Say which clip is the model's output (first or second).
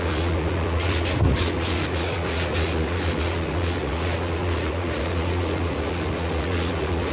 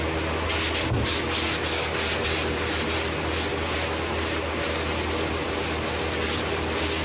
first